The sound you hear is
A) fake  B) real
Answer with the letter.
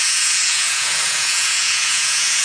A